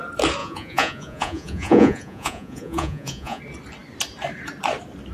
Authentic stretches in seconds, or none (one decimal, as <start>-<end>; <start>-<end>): 0.0-0.4; 3.4-5.1